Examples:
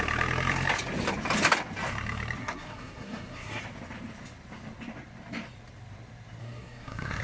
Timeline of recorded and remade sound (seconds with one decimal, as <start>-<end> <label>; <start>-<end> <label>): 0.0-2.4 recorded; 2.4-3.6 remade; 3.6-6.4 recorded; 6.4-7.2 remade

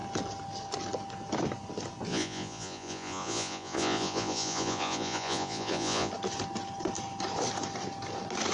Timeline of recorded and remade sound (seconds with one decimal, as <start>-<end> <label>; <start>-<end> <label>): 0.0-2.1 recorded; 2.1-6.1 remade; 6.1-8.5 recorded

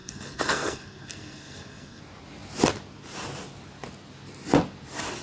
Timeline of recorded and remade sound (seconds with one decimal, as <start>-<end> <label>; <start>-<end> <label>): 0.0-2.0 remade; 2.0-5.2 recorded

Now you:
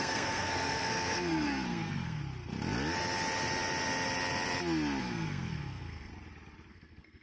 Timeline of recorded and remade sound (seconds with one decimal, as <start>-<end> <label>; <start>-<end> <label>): 0.0-2.2 remade; 2.2-5.0 recorded; 5.0-6.1 remade; 6.1-6.7 recorded; 6.7-7.2 remade

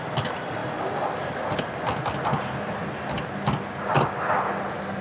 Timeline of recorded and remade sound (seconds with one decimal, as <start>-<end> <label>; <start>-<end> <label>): 0.0-0.6 recorded; 0.6-1.6 remade; 1.6-5.0 recorded